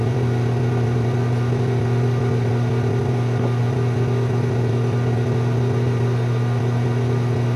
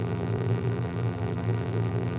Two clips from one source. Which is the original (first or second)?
first